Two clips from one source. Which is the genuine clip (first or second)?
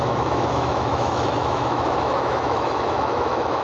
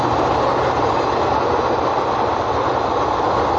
second